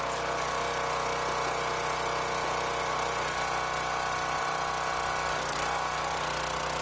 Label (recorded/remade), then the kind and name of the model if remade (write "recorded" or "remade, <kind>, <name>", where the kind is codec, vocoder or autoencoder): recorded